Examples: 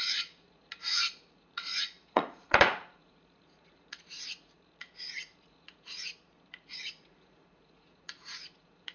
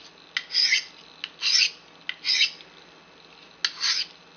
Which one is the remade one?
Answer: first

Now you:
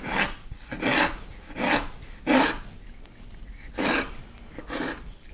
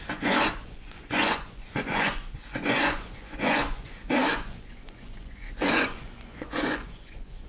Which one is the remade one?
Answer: second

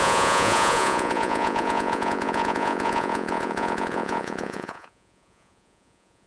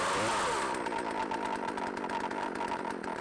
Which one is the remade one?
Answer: first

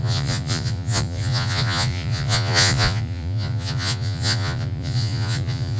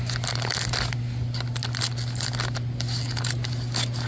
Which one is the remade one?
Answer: first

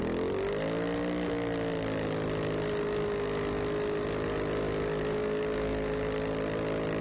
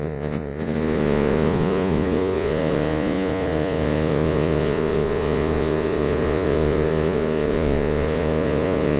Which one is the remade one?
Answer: second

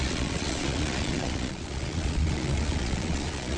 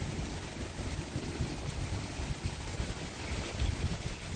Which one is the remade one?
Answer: first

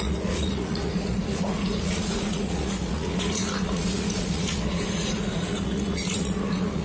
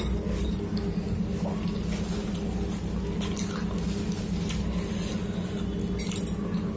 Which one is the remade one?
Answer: first